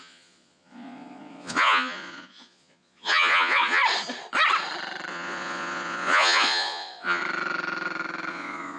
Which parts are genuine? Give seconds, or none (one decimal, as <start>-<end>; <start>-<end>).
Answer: 3.8-5.1; 7.2-8.3